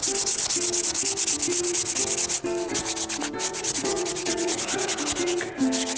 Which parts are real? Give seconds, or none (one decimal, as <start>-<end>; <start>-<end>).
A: 0.0-3.5; 4.9-6.0